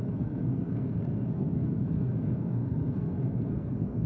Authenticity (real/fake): fake